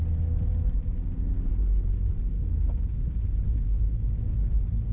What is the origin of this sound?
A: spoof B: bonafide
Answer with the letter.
B